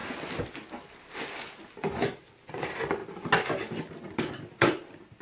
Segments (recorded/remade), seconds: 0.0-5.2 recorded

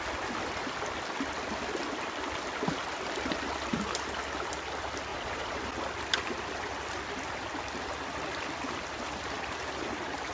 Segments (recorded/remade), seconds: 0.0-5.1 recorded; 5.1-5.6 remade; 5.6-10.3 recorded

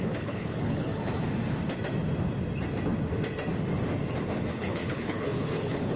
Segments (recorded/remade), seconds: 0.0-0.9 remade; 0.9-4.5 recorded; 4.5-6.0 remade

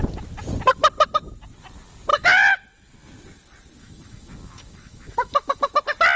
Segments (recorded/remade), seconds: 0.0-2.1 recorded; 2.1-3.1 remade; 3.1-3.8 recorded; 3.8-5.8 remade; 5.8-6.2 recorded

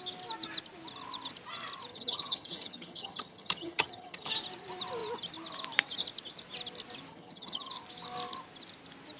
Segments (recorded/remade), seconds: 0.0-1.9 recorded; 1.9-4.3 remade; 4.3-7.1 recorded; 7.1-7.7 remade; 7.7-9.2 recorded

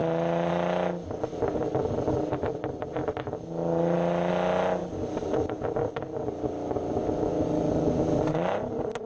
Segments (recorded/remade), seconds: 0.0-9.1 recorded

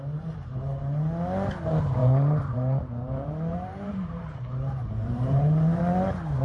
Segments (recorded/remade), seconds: 0.0-2.0 recorded; 2.0-5.8 remade; 5.8-6.4 recorded

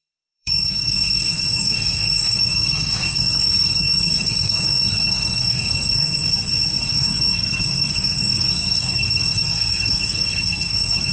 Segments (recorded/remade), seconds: 0.0-6.3 remade; 6.3-6.9 recorded; 6.9-11.1 remade